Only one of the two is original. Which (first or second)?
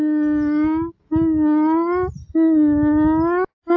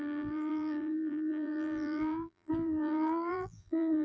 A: first